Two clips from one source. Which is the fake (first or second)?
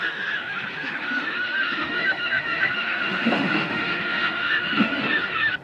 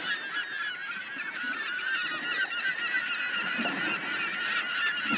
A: first